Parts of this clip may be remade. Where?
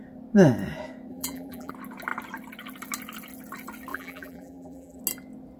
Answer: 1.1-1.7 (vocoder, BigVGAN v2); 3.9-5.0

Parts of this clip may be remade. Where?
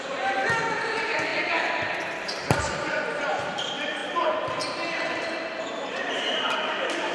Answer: 0.0-1.3 (vocoder, BigVGAN v2); 2.0-7.1